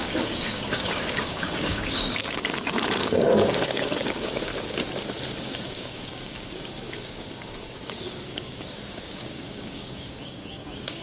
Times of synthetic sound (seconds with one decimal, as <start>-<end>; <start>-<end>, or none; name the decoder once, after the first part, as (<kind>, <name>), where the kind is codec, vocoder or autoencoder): 0.0-4.5 (codec, DAC); 5.4-11.0